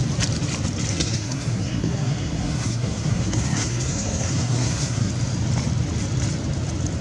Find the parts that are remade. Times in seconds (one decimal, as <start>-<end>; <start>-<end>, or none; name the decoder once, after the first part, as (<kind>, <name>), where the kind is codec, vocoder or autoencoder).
0.9-5.1 (codec, SNAC)